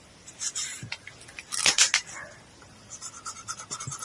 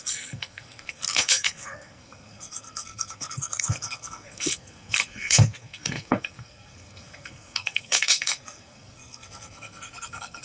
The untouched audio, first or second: first